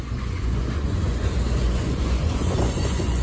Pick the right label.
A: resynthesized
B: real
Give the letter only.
A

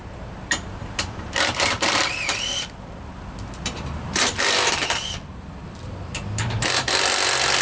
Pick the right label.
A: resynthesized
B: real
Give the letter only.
A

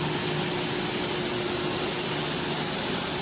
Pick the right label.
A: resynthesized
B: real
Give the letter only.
B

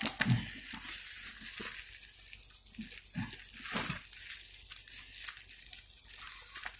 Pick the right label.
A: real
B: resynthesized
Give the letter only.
A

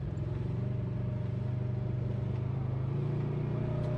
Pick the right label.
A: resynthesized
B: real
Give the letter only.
B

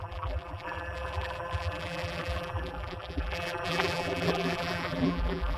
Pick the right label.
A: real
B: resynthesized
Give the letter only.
B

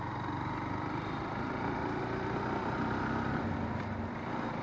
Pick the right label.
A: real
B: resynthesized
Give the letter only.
B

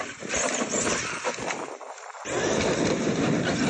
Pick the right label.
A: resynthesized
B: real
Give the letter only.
B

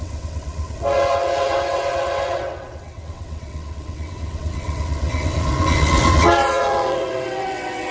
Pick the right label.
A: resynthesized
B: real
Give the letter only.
A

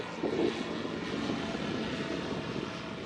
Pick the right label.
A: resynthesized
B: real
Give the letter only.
B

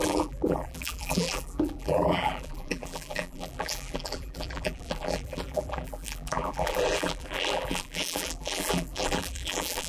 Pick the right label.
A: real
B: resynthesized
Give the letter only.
B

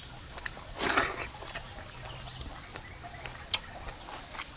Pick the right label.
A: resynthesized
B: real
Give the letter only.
B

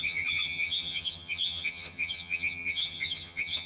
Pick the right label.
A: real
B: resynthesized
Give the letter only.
B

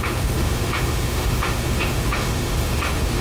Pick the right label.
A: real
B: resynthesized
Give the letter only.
B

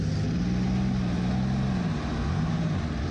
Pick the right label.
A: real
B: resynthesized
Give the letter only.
A